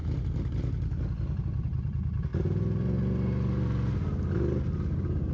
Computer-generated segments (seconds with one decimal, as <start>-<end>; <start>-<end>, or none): 1.4-2.3; 4.6-5.3

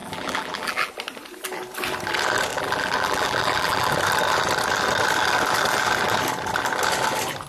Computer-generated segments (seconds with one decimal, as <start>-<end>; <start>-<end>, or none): 0.0-0.9; 2.5-3.9

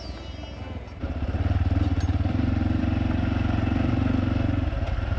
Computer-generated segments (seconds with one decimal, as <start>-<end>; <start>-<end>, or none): 1.0-2.8